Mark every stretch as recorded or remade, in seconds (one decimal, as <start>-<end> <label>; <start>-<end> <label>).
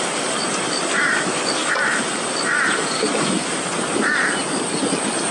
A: 0.0-5.3 recorded